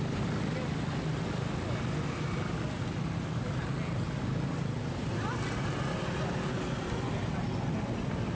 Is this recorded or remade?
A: recorded